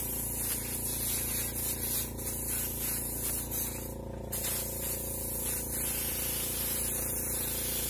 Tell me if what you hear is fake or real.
real